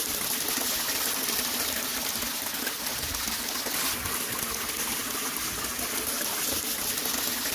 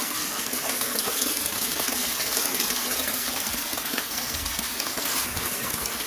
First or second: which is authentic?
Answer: first